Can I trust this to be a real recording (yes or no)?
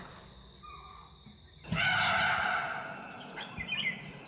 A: yes